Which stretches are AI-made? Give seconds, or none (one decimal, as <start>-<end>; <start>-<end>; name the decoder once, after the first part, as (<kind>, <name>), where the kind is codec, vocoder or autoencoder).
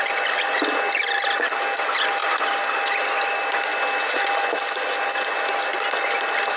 none